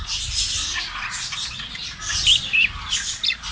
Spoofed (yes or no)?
no